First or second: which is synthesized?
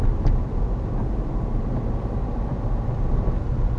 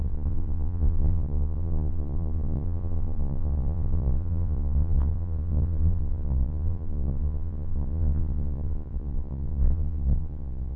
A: second